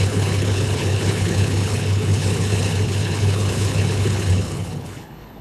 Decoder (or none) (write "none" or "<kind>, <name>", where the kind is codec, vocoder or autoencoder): codec, HILCodec